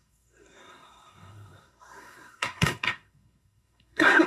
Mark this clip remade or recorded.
remade